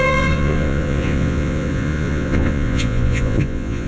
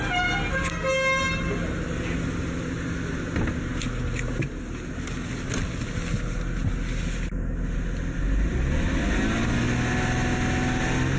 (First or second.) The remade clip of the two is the first